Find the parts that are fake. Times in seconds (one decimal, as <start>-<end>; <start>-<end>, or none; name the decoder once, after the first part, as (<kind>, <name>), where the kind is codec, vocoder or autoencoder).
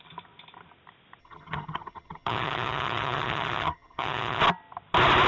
1.2-4.4 (vocoder, HiFi-GAN)